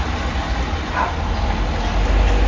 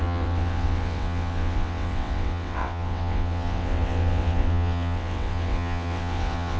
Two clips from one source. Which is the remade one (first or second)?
second